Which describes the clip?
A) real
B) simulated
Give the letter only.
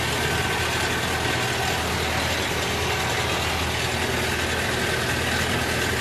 A